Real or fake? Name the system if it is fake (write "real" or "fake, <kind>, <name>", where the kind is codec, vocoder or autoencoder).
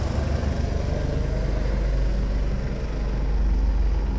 real